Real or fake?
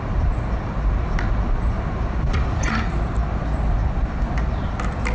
real